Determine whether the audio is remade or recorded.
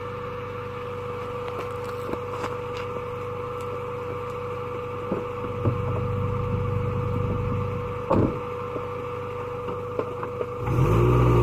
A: recorded